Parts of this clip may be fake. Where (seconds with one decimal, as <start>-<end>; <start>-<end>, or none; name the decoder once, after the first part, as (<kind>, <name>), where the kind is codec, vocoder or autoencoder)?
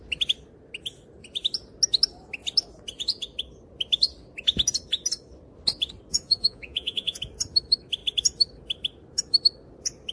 6.1-7.2 (vocoder, Vocos)